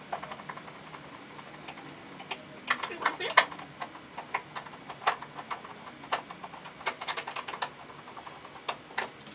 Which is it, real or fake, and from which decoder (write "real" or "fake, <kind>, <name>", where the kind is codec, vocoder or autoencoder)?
real